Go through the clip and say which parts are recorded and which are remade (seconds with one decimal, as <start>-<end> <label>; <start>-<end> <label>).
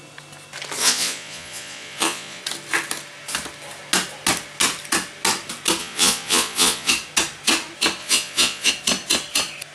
0.0-0.8 recorded; 0.8-2.4 remade; 2.4-5.8 recorded; 5.8-6.9 remade; 6.9-8.0 recorded; 8.0-8.7 remade; 8.7-9.7 recorded